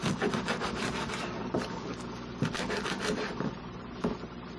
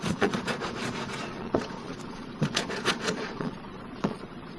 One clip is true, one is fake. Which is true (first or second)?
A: first